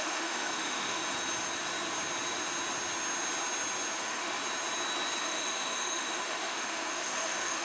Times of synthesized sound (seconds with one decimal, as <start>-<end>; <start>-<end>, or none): 0.0-1.0; 4.0-4.4; 5.2-7.6